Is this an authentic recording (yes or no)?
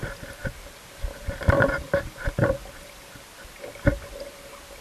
yes